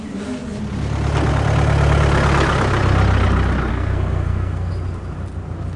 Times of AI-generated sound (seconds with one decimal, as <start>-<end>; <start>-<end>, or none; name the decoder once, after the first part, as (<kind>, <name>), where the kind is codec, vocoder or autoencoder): 3.7-4.7 (codec, SNAC)